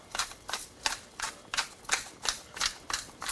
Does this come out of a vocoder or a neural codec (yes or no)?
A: yes